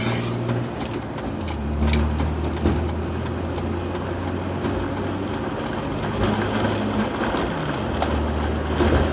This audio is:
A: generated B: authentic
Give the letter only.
B